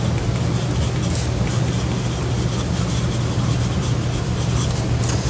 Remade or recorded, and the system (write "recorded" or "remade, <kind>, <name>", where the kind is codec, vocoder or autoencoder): recorded